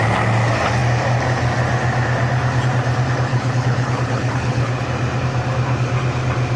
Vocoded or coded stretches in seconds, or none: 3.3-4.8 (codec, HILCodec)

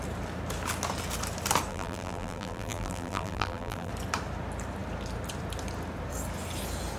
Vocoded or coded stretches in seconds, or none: 1.7-3.9 (vocoder, BigVGAN v2)

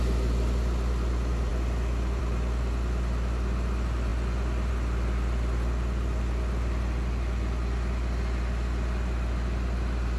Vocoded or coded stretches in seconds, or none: none

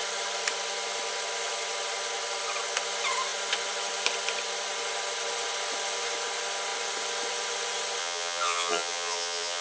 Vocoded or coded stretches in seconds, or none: 8.0-9.6 (vocoder, HiFi-GAN)

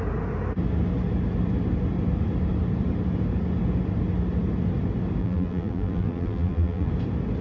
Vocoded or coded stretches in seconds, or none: 5.2-6.9 (vocoder, BigVGAN v2)